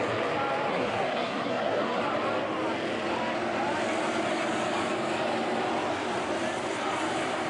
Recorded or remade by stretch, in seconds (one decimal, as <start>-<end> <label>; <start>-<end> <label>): 0.0-0.7 recorded; 0.7-2.0 remade; 2.0-7.5 recorded